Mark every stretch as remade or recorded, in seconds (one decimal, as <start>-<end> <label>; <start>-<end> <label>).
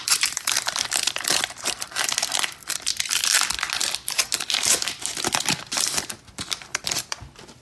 0.0-2.9 remade; 2.9-6.3 recorded; 6.3-7.6 remade